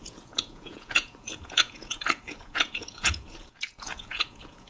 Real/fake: fake